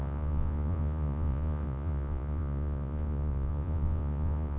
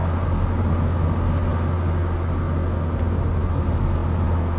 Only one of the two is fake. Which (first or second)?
first